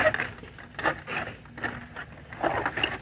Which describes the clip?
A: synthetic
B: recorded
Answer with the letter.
B